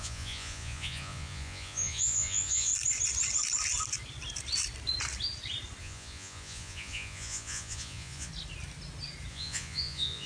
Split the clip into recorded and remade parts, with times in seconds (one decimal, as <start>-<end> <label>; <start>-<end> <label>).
0.0-2.7 remade; 2.7-5.8 recorded; 5.8-8.3 remade; 8.3-9.3 recorded; 9.3-10.3 remade